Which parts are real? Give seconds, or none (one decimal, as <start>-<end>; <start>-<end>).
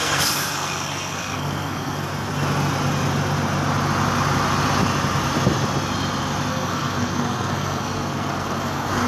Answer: 2.1-6.5